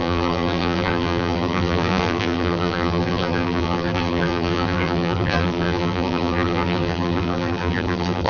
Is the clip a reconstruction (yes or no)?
yes